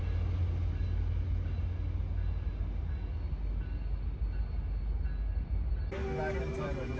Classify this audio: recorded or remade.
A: recorded